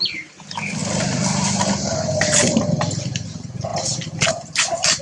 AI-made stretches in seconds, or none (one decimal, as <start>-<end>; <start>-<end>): none